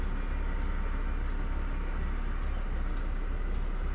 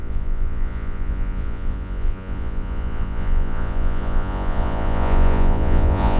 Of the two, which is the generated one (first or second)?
second